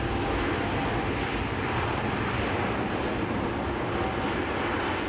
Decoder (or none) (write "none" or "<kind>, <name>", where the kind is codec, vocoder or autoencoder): none